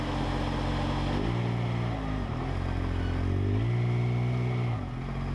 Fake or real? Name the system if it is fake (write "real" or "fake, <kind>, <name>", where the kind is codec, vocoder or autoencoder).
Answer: real